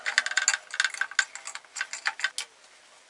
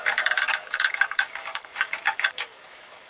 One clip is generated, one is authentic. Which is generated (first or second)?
second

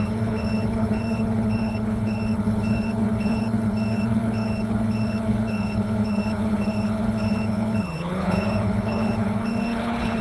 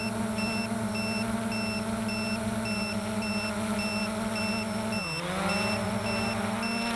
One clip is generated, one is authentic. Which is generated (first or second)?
first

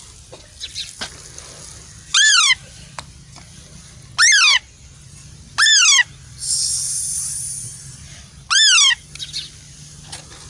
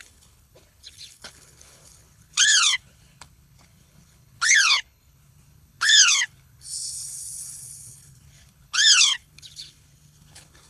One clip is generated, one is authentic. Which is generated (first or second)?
second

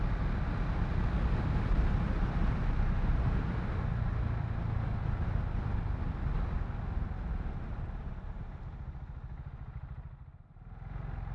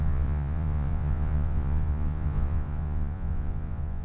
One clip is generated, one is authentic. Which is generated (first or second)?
second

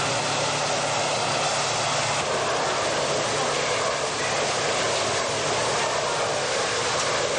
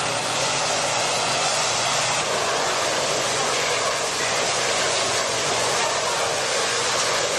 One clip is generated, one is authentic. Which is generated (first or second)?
second